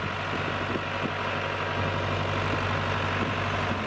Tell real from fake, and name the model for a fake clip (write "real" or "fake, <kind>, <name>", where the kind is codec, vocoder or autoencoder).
real